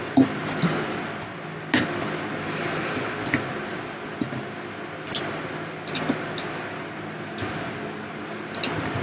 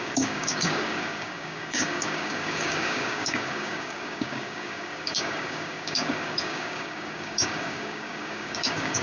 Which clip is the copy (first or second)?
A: second